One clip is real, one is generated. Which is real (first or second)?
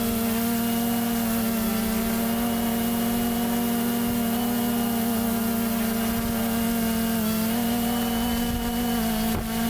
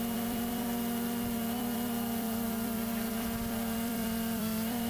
first